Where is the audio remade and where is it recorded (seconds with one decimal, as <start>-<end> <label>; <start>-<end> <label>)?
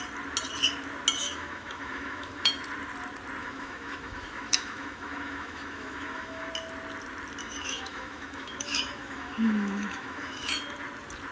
0.0-1.2 recorded; 1.2-2.6 remade; 2.6-3.4 recorded; 3.4-6.5 remade; 6.5-7.4 recorded; 7.4-10.6 remade; 10.6-11.3 recorded